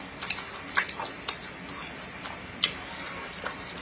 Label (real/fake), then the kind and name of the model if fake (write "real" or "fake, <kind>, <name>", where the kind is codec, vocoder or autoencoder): real